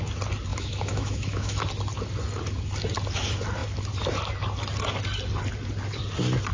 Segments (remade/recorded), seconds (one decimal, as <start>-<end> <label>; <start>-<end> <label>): 0.0-0.5 recorded; 0.5-1.6 remade; 1.6-6.5 recorded

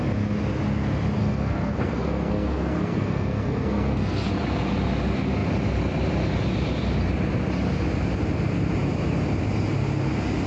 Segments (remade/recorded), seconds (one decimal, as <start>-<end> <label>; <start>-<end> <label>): 0.0-1.2 recorded; 1.2-4.3 remade; 4.3-10.5 recorded

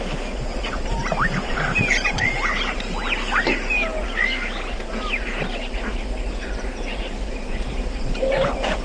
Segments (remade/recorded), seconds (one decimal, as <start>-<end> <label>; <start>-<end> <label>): 0.0-3.0 remade; 3.0-6.3 recorded; 6.3-8.8 remade

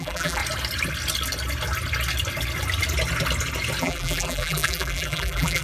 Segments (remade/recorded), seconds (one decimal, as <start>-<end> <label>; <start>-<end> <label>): 0.0-0.4 remade; 0.4-3.8 recorded; 3.8-5.6 remade

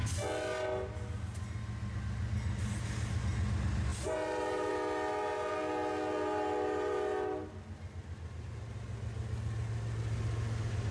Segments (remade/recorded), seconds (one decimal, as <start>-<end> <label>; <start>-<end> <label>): 0.0-3.9 recorded; 3.9-4.7 remade; 4.7-10.9 recorded

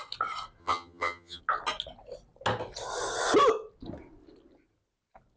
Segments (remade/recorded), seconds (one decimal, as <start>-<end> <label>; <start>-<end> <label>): 0.0-0.6 recorded; 0.6-1.4 remade; 1.4-5.4 recorded

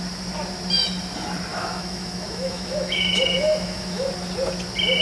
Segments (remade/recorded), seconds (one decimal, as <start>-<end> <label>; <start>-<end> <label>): 0.0-1.5 recorded; 1.5-4.1 remade; 4.1-5.0 recorded

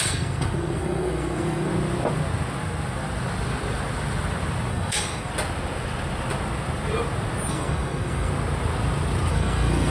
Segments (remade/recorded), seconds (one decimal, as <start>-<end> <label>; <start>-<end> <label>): 0.0-1.7 remade; 1.7-4.7 recorded; 4.7-5.3 remade; 5.3-7.5 recorded; 7.5-8.3 remade; 8.3-9.3 recorded; 9.3-9.9 remade